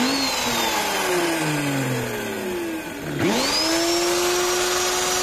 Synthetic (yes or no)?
no